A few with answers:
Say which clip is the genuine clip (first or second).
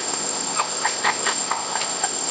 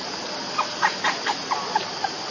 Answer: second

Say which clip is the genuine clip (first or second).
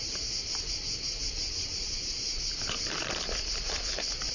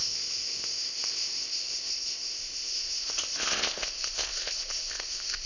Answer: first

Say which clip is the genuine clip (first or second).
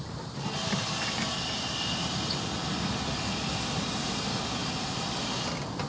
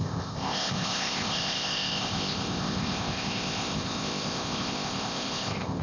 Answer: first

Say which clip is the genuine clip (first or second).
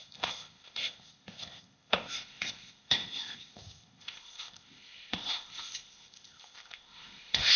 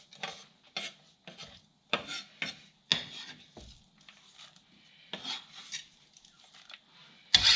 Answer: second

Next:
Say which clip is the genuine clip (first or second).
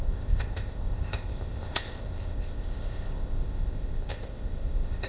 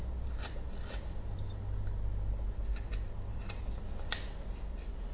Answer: second